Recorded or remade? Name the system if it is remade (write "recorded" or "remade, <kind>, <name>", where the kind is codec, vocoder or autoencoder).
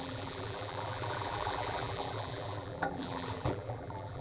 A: remade, vocoder, BigVGAN v2